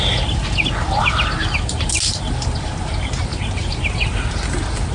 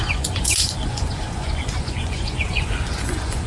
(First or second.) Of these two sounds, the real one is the first